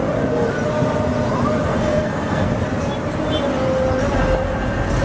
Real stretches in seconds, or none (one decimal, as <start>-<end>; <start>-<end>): 0.0-1.7; 2.5-5.0